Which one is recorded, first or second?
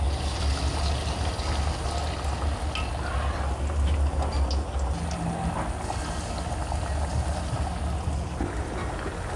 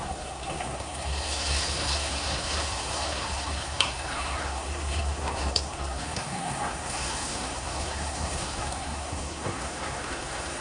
first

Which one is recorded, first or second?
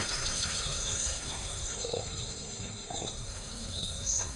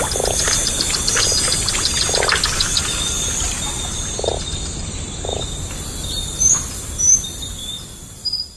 second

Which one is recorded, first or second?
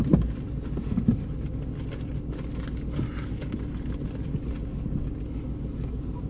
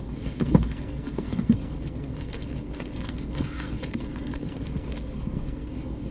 first